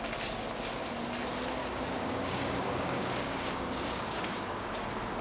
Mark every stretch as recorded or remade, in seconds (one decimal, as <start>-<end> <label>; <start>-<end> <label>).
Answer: 0.0-1.6 recorded; 1.6-4.7 remade; 4.7-5.2 recorded